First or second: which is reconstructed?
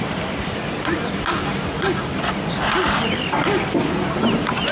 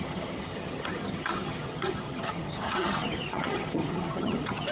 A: second